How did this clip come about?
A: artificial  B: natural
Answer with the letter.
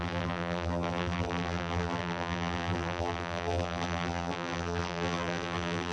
A